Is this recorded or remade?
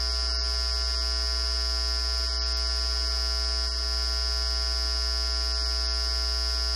recorded